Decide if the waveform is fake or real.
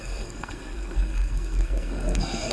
fake